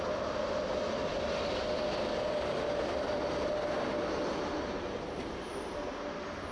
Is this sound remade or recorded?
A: recorded